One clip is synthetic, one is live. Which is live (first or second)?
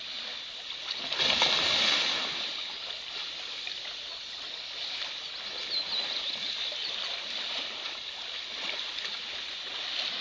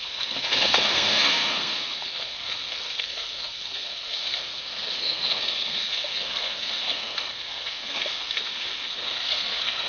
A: first